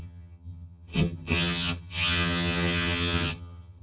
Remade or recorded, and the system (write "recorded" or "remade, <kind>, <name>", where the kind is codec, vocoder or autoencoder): remade, vocoder, HiFi-GAN